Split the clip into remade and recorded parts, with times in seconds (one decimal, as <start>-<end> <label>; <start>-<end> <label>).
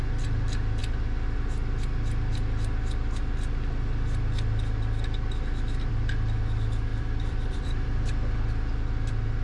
0.0-6.9 recorded; 6.9-8.5 remade; 8.5-9.4 recorded